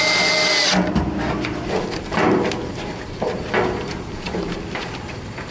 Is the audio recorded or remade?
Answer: recorded